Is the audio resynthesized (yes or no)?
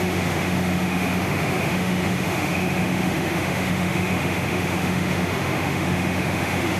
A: yes